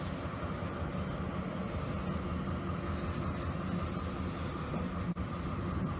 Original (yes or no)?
yes